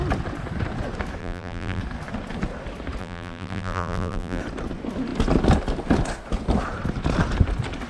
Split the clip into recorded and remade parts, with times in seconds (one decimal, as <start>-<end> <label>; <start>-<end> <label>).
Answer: 0.0-1.2 recorded; 1.2-1.8 remade; 1.8-3.0 recorded; 3.0-4.4 remade; 4.4-7.9 recorded